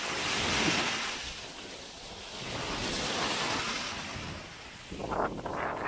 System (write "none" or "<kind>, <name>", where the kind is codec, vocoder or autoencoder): none